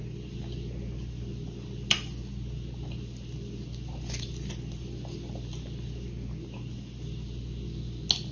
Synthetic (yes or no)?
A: no